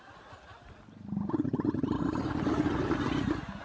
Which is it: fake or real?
real